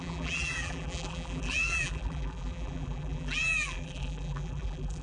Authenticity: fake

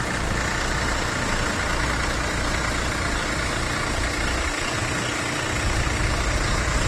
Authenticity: real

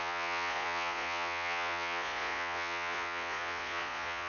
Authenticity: fake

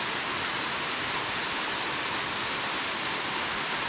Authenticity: real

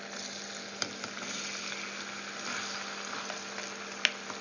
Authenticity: real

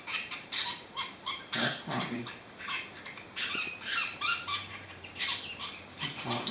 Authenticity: fake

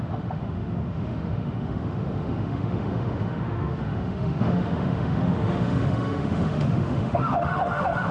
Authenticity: fake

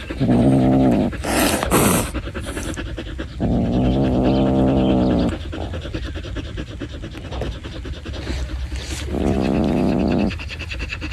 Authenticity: real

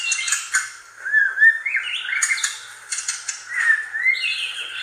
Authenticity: real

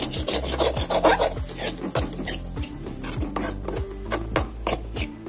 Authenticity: real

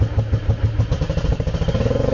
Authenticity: real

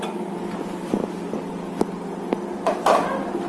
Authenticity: fake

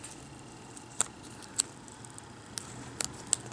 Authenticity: real